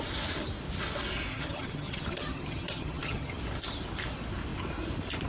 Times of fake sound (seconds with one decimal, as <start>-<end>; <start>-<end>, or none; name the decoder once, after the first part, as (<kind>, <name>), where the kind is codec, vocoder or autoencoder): 1.3-3.4 (vocoder, HiFi-GAN)